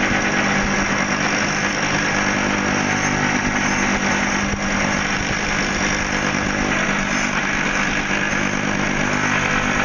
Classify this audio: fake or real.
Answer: real